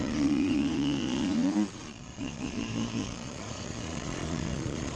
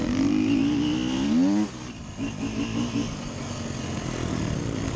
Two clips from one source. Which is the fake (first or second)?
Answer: first